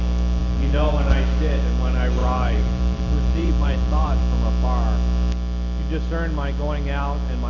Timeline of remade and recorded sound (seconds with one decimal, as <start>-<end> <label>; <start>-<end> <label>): 0.0-0.4 recorded; 0.4-0.9 remade; 0.9-2.2 recorded; 2.2-4.2 remade; 4.2-7.5 recorded